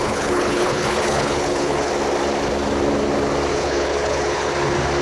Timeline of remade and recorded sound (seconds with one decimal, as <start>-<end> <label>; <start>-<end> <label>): 0.0-1.9 remade; 1.9-3.5 recorded; 3.5-4.5 remade; 4.5-5.0 recorded